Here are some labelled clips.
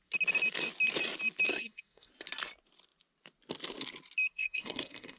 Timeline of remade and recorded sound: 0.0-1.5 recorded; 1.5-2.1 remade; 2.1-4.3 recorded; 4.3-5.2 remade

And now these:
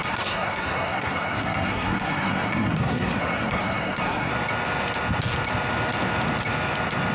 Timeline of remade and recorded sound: 0.0-4.3 remade; 4.3-7.1 recorded

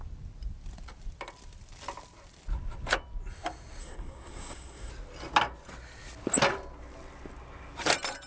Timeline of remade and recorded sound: 0.0-3.8 recorded; 3.8-4.9 remade; 4.9-8.3 recorded

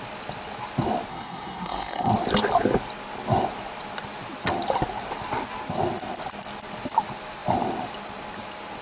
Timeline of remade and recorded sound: 0.0-1.1 recorded; 1.1-2.1 remade; 2.1-8.8 recorded

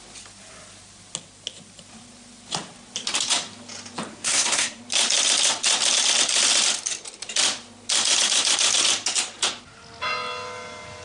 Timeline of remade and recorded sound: 0.0-4.1 recorded; 4.1-4.8 remade; 4.8-11.0 recorded

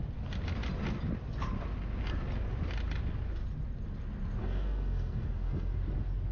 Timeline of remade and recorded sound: 0.0-4.4 recorded; 4.4-5.7 remade; 5.7-6.3 recorded